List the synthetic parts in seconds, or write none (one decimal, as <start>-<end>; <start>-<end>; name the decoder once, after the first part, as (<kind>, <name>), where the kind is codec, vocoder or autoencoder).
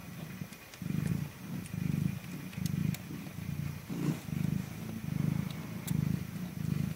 none